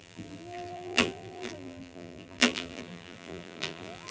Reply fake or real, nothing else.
fake